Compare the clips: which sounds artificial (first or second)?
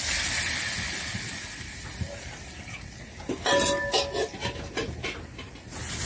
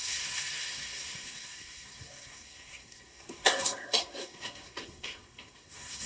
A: second